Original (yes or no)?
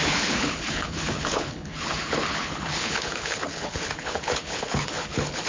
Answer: no